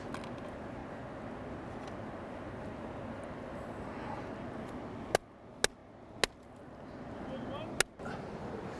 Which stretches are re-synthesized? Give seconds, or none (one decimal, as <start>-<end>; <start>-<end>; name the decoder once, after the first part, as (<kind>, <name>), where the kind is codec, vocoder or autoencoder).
none